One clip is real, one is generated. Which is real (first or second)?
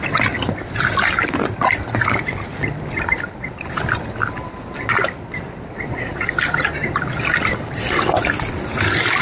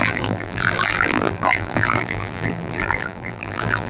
first